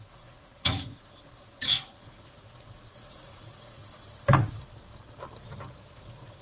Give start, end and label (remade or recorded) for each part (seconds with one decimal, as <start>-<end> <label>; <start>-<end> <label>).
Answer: 0.0-3.8 remade; 3.8-5.9 recorded; 5.9-6.4 remade